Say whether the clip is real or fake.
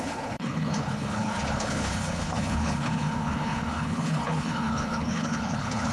fake